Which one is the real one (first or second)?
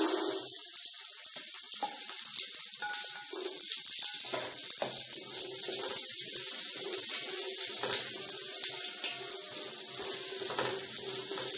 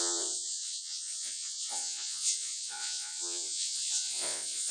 first